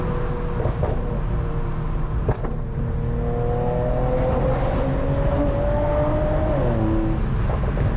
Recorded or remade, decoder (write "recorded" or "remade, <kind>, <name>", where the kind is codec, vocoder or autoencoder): recorded